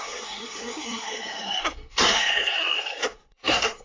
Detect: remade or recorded remade